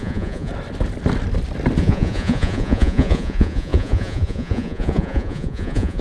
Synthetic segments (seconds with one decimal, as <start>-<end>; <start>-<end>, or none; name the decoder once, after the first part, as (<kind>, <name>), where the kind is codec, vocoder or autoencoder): 0.0-0.5 (vocoder, Vocos); 1.8-6.0